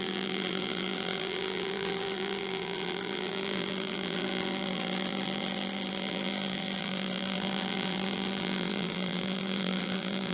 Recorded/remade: remade